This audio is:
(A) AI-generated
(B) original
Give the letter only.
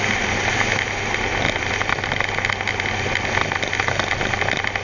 B